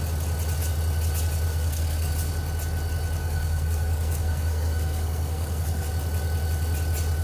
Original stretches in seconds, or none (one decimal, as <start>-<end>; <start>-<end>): 0.0-1.5; 2.1-3.2; 5.9-7.2

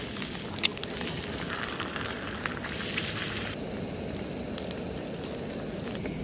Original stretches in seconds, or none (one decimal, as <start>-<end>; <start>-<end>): 0.0-6.2

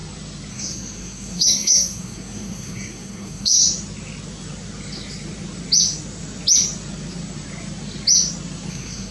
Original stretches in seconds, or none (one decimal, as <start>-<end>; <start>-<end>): 0.0-0.5; 3.6-8.7

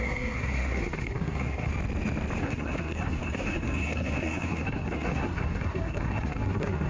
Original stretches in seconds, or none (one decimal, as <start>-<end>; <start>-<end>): 1.7-2.4

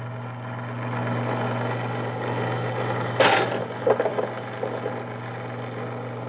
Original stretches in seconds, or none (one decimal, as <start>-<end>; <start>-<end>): 0.0-6.3